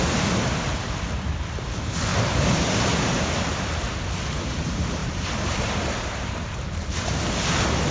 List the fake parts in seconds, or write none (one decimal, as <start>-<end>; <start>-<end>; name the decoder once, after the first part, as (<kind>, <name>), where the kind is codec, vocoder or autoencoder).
2.1-3.8 (vocoder, BigVGAN v2); 5.0-7.2